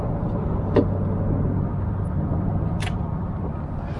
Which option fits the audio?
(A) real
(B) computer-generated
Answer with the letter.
A